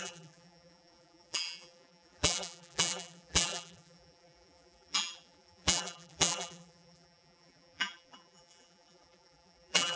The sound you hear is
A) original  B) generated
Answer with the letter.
B